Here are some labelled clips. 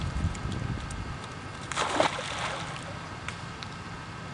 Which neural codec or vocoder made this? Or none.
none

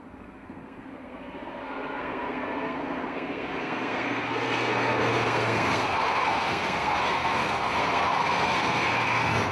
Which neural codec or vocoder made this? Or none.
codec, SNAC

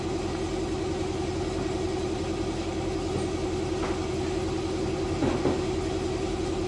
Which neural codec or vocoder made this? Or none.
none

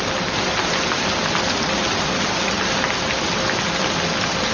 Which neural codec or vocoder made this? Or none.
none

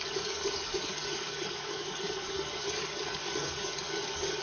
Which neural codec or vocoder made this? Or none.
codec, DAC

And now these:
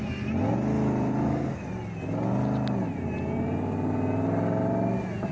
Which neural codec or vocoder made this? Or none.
none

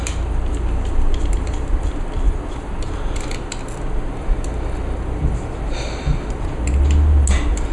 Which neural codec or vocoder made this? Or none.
none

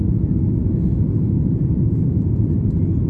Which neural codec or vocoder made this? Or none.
none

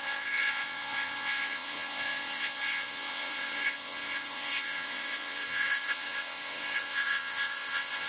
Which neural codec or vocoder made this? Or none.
vocoder, WaveNeXt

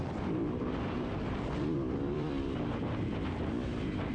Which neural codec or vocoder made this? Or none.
vocoder, BigVGAN v2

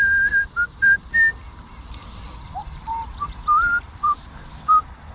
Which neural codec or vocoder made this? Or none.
vocoder, BigVGAN v2